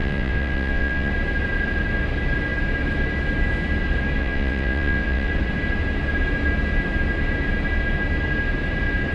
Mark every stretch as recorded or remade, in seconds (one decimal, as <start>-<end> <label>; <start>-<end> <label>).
0.0-1.1 remade; 1.1-4.2 recorded; 4.2-5.3 remade; 5.3-9.1 recorded